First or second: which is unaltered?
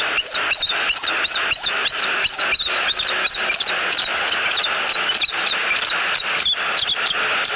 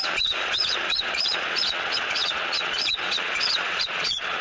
first